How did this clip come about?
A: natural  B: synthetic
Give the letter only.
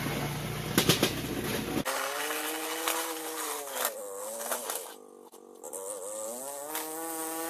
A